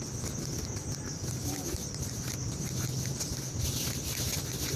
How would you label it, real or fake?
real